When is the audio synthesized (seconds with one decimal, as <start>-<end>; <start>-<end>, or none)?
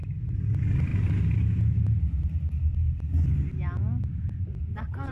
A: none